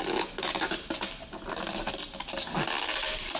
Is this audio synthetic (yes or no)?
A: no